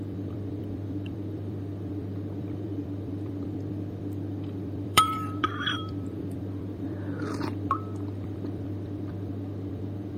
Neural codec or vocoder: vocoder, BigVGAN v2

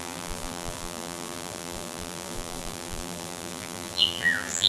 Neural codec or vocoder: vocoder, BigVGAN v2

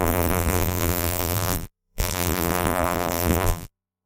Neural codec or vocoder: vocoder, BigVGAN v2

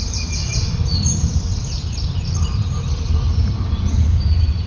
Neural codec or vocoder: vocoder, BigVGAN v2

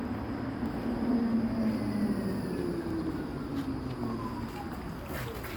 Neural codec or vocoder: none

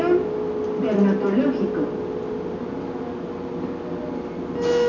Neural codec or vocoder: none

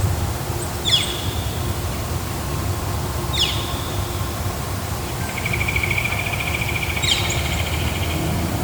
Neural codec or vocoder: vocoder, BigVGAN v2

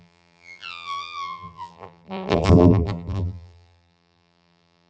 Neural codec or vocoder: vocoder, BigVGAN v2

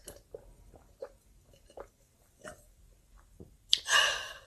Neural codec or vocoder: vocoder, BigVGAN v2